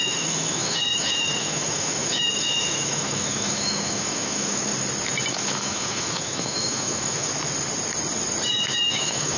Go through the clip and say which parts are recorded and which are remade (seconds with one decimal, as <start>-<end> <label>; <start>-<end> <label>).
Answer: 0.0-4.7 remade; 4.7-5.3 recorded; 5.3-7.3 remade; 7.3-8.5 recorded; 8.5-9.4 remade